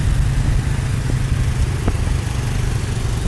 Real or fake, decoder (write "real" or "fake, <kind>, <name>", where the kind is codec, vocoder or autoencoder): real